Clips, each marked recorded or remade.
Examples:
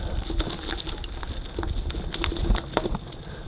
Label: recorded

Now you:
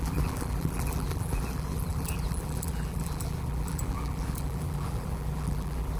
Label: remade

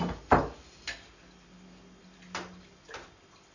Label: recorded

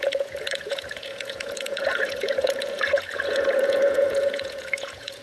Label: remade